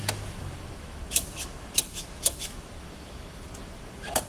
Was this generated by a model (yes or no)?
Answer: yes